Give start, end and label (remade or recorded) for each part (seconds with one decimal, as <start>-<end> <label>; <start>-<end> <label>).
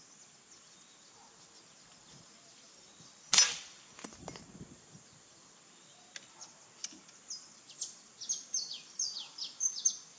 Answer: 0.0-10.2 recorded